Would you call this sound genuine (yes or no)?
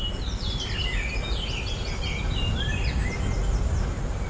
yes